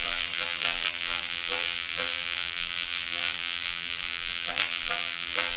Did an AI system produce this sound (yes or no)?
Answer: yes